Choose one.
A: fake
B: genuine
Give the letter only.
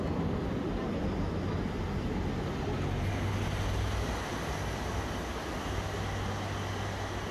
B